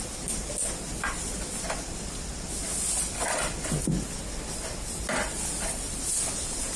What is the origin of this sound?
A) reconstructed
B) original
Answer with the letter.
B